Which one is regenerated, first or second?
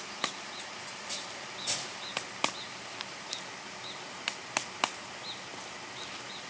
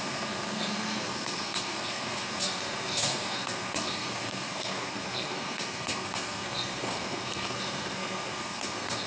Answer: second